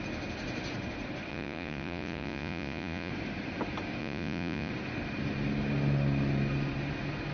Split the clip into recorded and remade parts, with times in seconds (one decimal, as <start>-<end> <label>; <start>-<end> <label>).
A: 0.0-1.3 recorded; 1.3-3.1 remade; 3.1-4.0 recorded; 4.0-4.7 remade; 4.7-7.3 recorded